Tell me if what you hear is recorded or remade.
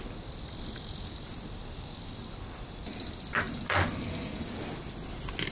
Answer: recorded